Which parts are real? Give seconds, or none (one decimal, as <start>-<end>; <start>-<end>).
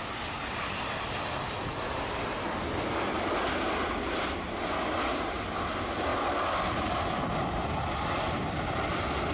0.0-9.3